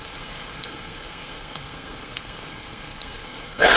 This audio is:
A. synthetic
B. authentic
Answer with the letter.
A